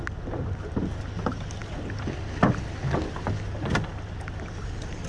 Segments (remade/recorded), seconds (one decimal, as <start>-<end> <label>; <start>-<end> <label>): 0.0-5.1 recorded